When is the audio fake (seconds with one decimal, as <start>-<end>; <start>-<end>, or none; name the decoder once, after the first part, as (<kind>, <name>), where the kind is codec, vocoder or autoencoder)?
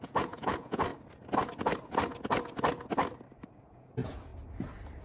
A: 0.0-0.9 (vocoder, Vocos); 3.6-4.3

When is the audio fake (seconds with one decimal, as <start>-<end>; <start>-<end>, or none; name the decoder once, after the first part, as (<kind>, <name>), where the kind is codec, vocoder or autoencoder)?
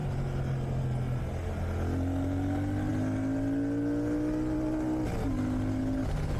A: none